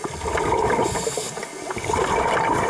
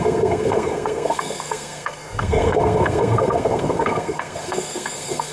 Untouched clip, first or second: first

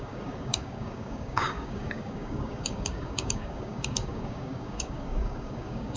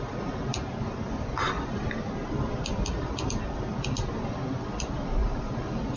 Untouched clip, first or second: second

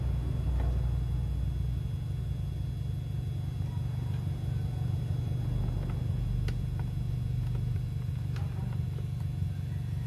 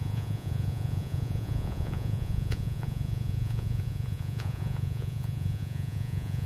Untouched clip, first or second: first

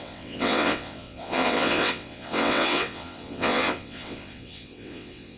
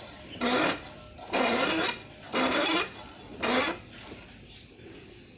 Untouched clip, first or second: second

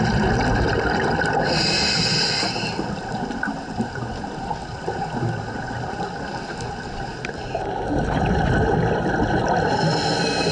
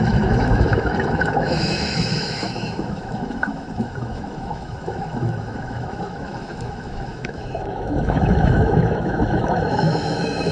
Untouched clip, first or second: first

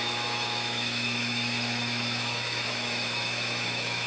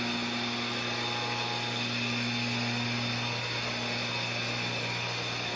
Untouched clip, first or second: second